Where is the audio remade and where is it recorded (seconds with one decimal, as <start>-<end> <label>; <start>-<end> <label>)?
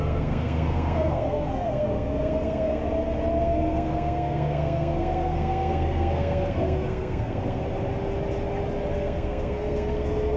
0.0-2.8 remade; 2.8-3.4 recorded; 3.4-7.6 remade; 7.6-8.9 recorded; 8.9-10.4 remade